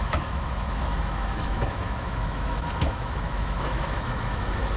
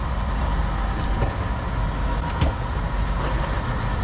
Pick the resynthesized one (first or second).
first